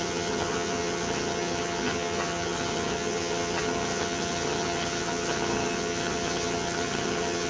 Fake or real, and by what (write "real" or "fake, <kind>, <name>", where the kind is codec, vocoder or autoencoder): fake, vocoder, HiFi-GAN